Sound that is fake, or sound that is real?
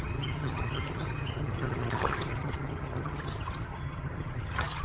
fake